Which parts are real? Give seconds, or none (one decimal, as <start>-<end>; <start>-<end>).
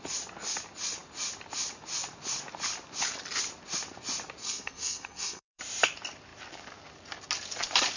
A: 0.0-4.4; 5.6-8.0